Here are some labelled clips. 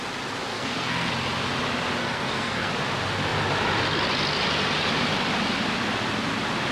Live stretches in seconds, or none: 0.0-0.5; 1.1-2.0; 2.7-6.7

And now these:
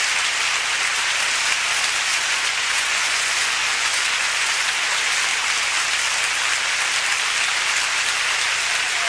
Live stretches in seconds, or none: 0.0-2.1; 4.7-9.1

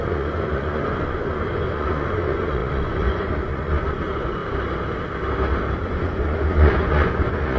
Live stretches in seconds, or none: 4.4-5.8

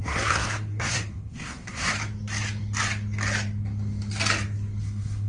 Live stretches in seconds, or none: 1.9-4.8

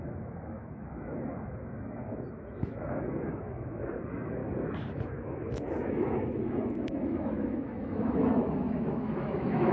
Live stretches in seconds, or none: 4.4-5.1

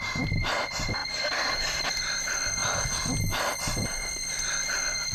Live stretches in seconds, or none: 2.6-3.2; 4.2-5.1

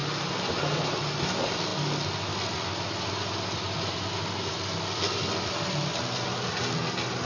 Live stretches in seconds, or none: 0.0-7.3

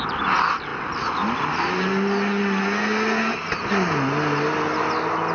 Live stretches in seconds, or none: 0.0-5.3